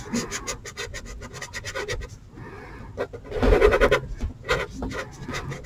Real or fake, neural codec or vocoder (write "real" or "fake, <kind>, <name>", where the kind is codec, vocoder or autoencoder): real